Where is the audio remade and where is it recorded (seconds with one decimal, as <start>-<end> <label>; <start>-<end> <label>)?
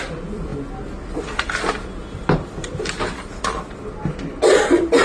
0.0-5.0 recorded